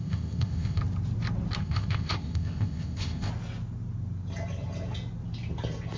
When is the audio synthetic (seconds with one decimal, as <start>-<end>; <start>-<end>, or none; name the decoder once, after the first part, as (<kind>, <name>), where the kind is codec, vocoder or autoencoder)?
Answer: 0.0-0.8 (codec, ZipCodec); 1.6-3.3